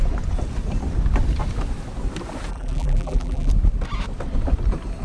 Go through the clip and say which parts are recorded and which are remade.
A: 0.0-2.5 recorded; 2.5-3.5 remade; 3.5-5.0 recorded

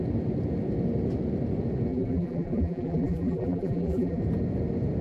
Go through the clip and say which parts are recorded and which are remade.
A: 0.0-1.9 recorded; 1.9-4.2 remade; 4.2-5.0 recorded

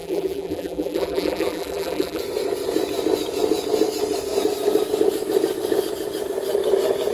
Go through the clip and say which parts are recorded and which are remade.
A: 0.0-2.2 remade; 2.2-7.1 recorded

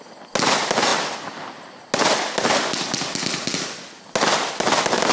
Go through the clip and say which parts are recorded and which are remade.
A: 0.0-5.1 recorded

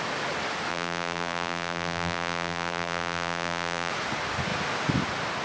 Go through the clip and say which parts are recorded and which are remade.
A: 0.0-0.7 recorded; 0.7-3.9 remade; 3.9-5.4 recorded

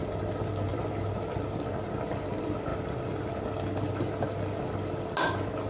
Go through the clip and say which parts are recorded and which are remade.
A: 0.0-0.7 recorded; 0.7-2.2 remade; 2.2-5.7 recorded